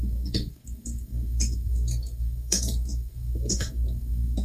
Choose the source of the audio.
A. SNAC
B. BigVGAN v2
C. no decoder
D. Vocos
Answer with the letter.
A